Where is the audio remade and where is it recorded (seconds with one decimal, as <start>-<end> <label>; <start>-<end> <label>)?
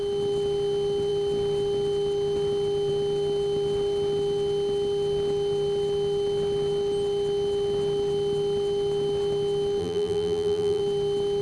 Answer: 0.0-9.8 recorded; 9.8-10.8 remade; 10.8-11.4 recorded